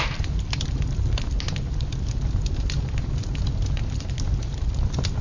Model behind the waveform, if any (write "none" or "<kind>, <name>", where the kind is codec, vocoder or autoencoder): none